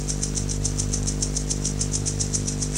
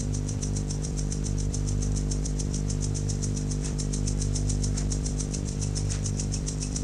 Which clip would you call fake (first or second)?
second